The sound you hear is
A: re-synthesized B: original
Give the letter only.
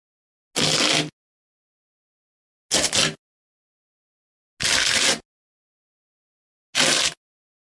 B